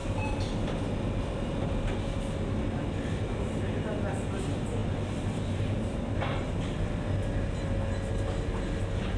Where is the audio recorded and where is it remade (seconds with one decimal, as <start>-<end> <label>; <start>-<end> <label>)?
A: 0.0-9.2 recorded